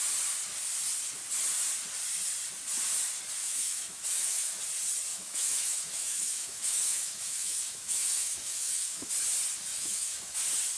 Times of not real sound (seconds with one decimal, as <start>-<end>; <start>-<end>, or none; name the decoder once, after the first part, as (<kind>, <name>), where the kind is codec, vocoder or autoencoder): 3.4-4.6 (autoencoder, DAC-VAE); 5.1-9.1; 9.7-10.4

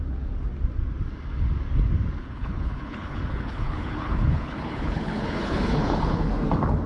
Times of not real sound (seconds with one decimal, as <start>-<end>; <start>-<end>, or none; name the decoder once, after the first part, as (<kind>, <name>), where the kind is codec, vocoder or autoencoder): 2.2-6.3 (codec, HILCodec)